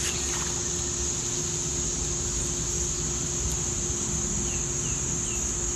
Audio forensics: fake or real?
real